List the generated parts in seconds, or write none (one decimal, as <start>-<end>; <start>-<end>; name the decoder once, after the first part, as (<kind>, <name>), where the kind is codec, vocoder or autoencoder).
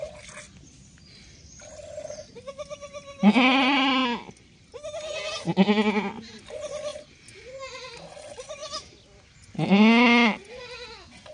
none